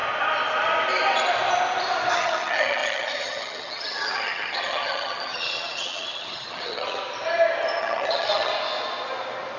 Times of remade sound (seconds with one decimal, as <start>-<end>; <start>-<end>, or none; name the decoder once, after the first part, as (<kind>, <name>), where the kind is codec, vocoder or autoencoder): 2.1-7.0 (vocoder, HiFi-GAN); 7.8-8.5